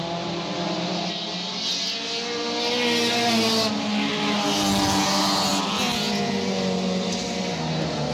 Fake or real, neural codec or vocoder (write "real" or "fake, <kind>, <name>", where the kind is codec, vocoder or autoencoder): real